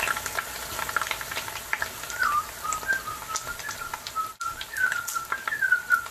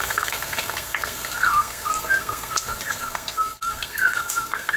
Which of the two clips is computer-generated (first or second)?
second